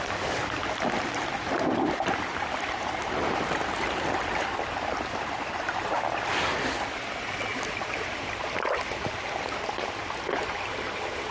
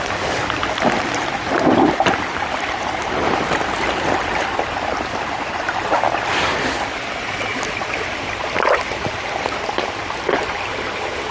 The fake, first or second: second